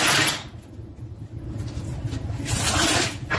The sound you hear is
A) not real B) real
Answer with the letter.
B